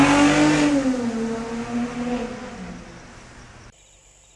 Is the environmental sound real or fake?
real